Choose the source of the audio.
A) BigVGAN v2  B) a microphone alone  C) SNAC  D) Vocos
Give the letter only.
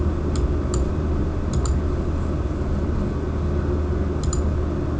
B